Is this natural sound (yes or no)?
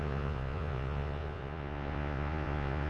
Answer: no